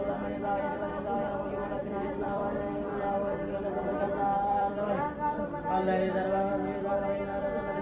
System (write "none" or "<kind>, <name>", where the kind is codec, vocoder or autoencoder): vocoder, BigVGAN v2